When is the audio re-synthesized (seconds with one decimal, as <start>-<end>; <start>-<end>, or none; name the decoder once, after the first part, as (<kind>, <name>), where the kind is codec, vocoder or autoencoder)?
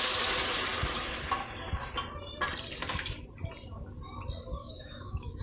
4.6-5.4 (autoencoder, DAC-VAE)